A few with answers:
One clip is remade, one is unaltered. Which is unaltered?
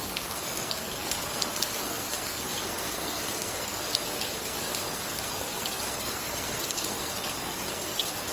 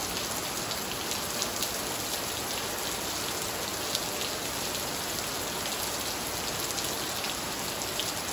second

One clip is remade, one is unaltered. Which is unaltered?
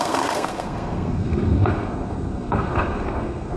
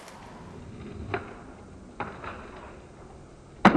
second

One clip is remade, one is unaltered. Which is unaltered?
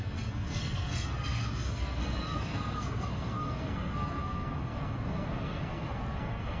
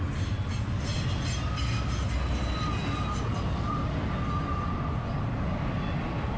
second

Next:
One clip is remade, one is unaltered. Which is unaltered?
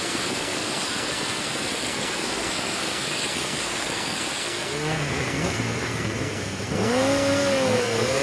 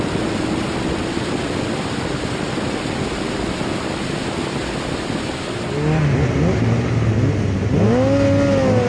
second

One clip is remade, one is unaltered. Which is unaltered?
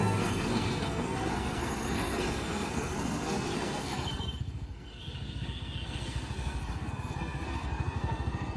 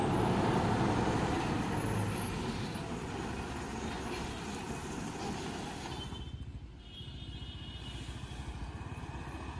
second